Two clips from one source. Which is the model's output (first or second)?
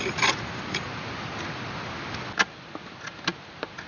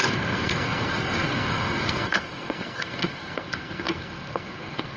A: second